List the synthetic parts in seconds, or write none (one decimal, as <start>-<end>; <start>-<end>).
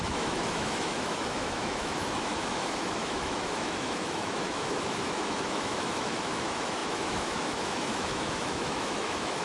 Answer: 0.0-9.4